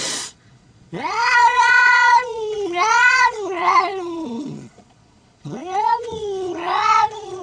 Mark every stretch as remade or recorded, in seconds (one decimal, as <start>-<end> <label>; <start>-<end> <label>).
0.0-7.4 remade